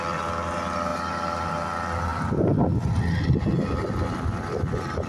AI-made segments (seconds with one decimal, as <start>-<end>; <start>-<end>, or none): none